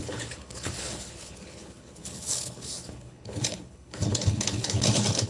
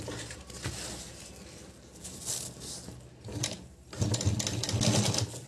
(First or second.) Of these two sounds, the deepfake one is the first